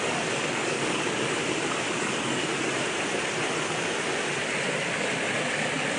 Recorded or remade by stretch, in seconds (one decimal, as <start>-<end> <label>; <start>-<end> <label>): 0.0-1.4 remade; 1.4-2.0 recorded; 2.0-2.5 remade; 2.5-6.0 recorded